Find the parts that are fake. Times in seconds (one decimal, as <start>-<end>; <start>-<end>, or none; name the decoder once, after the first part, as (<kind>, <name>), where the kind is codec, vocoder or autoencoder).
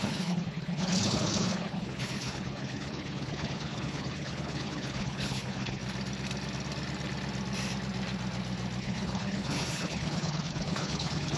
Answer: 0.0-5.8 (codec, HILCodec); 8.8-11.4